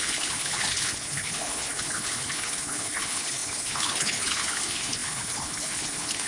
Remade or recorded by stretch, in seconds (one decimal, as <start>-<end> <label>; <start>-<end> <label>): 0.0-6.3 remade